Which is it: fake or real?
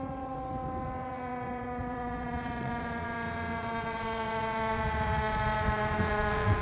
fake